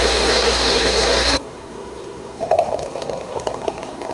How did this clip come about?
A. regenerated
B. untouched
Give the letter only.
A